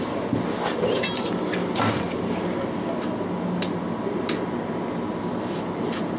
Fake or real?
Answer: real